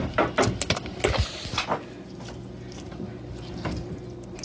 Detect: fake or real real